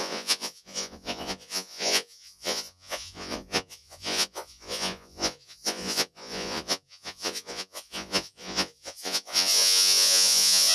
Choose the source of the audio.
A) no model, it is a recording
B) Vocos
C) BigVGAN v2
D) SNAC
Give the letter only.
B